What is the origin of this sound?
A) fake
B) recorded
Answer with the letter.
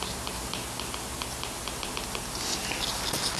B